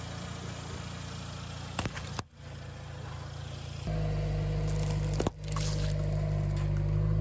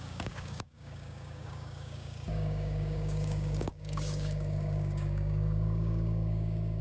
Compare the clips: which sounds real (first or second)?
first